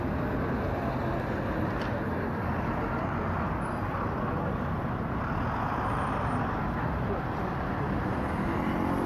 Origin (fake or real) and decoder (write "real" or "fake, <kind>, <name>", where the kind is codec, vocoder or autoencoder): real